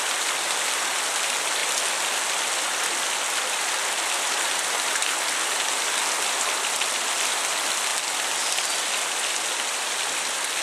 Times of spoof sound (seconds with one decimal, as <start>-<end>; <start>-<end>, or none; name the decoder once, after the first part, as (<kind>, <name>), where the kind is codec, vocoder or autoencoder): none